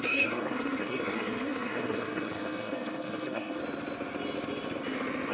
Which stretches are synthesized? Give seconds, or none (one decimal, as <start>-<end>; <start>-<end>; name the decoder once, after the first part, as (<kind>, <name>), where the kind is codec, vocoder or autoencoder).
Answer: 0.0-3.6 (codec, SNAC)